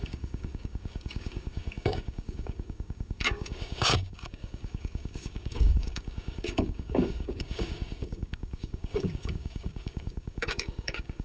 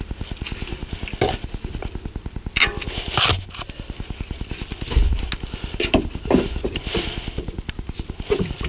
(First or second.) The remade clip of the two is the first